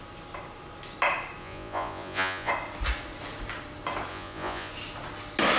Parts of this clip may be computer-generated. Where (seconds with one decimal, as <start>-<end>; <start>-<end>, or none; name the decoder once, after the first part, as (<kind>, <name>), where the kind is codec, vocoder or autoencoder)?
1.4-2.5 (vocoder, Vocos); 4.1-4.7